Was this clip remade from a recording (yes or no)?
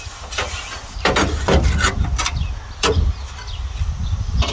no